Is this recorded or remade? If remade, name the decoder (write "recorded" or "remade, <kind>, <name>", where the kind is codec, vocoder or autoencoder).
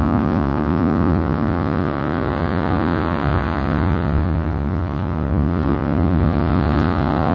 remade, vocoder, Vocos